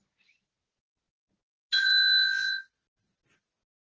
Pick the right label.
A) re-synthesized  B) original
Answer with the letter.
B